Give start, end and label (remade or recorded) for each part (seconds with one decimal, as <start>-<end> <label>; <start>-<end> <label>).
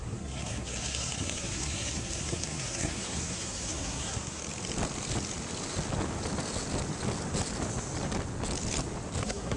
0.0-4.4 remade; 4.4-9.2 recorded; 9.2-9.6 remade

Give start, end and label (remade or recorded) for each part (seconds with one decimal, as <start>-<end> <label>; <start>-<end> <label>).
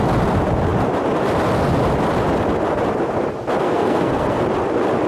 0.0-3.6 recorded; 3.6-4.4 remade; 4.4-5.1 recorded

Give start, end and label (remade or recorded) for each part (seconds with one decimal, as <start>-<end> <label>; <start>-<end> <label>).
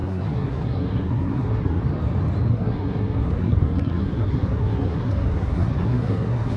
0.0-1.8 remade; 1.8-2.5 recorded; 2.5-6.6 remade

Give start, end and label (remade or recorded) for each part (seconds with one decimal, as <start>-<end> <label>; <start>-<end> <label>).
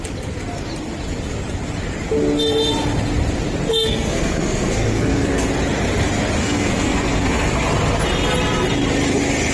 0.0-3.7 recorded; 3.7-5.5 remade; 5.5-6.4 recorded; 6.4-7.5 remade; 7.5-9.5 recorded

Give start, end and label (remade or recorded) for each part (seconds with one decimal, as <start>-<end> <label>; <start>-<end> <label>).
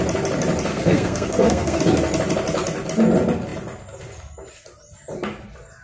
0.0-0.7 recorded; 0.7-1.8 remade; 1.8-5.8 recorded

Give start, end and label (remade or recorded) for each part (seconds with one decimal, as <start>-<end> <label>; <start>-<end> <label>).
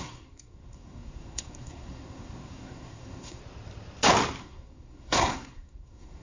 0.0-3.4 remade; 3.4-4.4 recorded; 4.4-6.2 remade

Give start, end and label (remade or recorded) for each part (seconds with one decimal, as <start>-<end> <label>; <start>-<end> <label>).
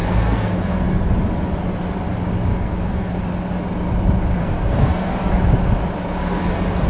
0.0-1.0 remade; 1.0-2.5 recorded; 2.5-3.1 remade; 3.1-4.4 recorded; 4.4-5.3 remade; 5.3-6.9 recorded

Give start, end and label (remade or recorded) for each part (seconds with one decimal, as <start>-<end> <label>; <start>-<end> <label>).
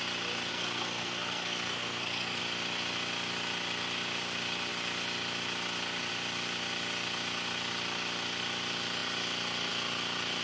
0.0-0.5 recorded; 0.5-2.4 remade; 2.4-10.4 recorded